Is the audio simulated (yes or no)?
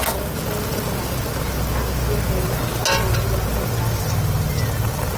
no